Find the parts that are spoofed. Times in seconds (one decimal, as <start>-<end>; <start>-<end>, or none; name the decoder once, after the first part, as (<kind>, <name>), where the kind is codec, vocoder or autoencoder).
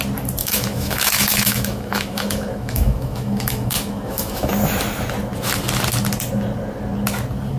0.4-4.5 (autoencoder, DAC-VAE)